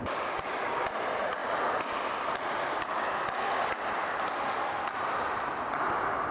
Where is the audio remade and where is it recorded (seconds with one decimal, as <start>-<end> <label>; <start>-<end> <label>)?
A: 0.0-6.3 recorded

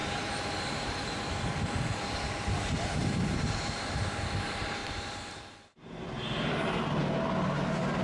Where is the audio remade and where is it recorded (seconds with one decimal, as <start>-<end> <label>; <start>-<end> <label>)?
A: 0.0-4.3 remade; 4.3-4.8 recorded; 4.8-5.4 remade; 5.4-8.0 recorded

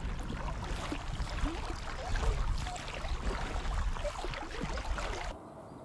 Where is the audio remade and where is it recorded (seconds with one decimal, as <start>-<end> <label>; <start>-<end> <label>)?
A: 0.0-5.8 recorded

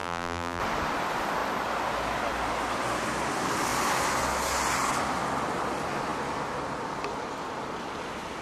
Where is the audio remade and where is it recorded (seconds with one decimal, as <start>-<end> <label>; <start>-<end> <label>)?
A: 0.0-0.6 remade; 0.6-8.4 recorded